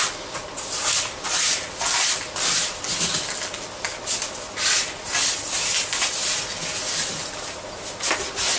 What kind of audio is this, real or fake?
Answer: real